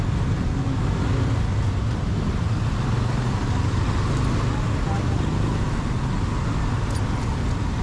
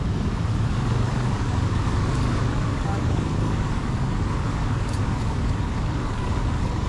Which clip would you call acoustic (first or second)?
first